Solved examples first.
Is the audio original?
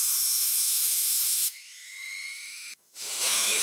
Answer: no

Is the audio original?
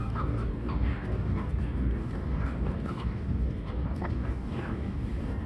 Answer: no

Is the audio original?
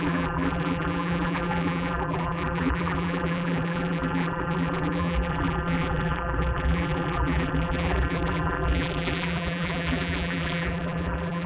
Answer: no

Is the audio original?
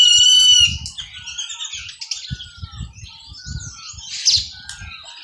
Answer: yes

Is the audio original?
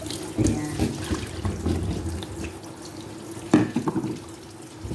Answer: yes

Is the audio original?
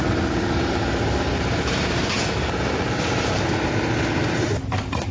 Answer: no